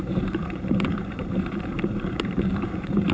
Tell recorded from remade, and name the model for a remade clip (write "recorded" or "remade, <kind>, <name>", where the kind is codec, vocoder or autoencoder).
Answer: remade, vocoder, BigVGAN v2